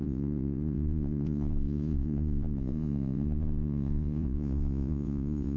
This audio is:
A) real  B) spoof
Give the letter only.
B